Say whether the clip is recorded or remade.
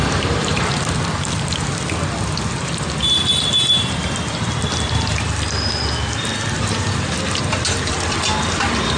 recorded